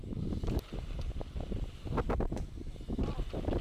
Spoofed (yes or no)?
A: no